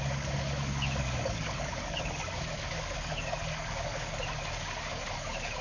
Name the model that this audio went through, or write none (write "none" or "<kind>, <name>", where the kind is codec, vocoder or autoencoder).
codec, DAC